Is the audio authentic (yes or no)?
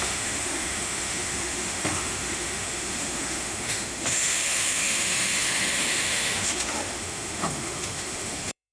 no